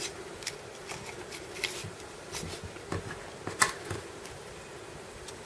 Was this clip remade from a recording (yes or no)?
no